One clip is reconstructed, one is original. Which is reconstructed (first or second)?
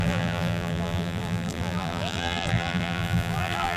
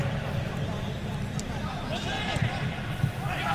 first